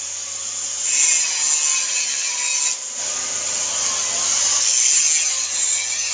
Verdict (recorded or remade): recorded